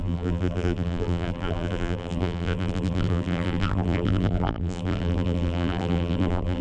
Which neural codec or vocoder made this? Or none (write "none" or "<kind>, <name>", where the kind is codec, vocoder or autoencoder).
vocoder, BigVGAN v2